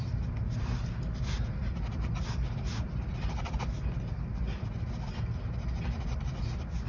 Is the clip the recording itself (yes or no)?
yes